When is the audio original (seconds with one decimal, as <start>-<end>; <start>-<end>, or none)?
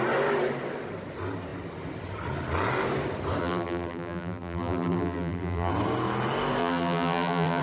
0.0-3.4; 5.7-6.6